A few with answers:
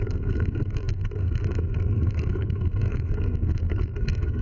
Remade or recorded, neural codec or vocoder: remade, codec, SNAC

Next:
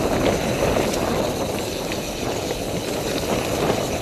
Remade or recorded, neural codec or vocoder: recorded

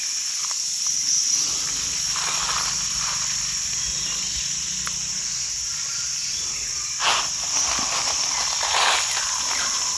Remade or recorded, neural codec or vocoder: recorded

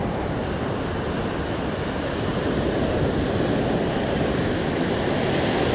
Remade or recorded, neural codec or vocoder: recorded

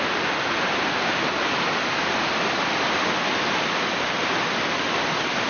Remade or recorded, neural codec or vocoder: recorded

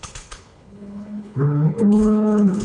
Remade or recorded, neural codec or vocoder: remade, codec, HILCodec